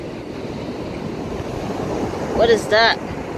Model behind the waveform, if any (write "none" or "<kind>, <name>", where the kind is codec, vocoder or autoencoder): none